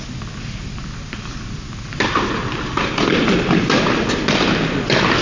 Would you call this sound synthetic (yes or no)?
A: no